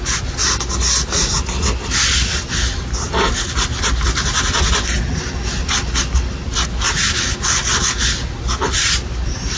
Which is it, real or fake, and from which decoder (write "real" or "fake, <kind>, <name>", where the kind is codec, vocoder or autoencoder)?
real